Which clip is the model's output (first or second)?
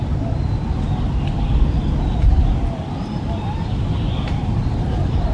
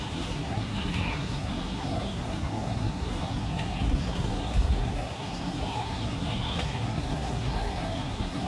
second